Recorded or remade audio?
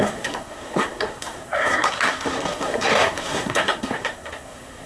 remade